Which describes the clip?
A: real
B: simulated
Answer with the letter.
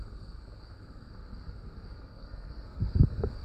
B